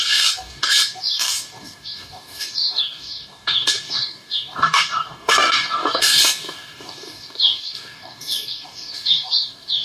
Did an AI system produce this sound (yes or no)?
yes